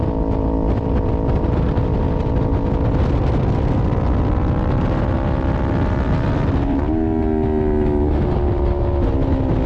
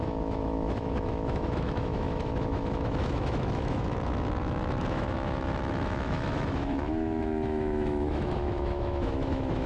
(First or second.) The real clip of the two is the first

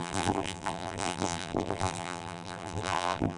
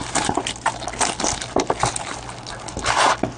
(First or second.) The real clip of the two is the second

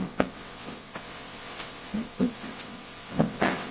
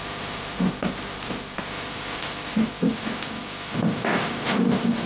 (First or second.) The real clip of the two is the second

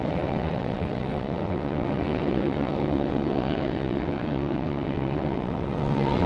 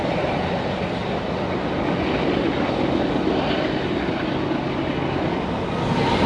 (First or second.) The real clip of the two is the second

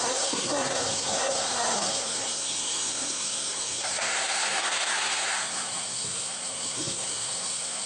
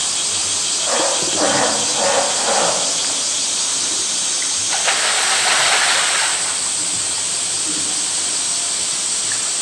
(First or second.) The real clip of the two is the second